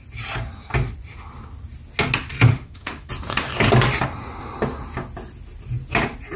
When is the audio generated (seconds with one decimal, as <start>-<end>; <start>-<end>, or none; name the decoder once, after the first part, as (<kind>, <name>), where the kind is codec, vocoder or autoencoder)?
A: 2.5-3.1 (autoencoder, DAC-VAE)